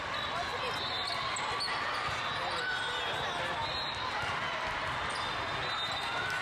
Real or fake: real